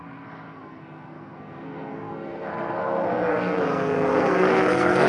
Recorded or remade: remade